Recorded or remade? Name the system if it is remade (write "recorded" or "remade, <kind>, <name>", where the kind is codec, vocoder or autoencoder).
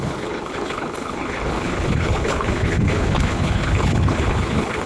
remade, codec, HILCodec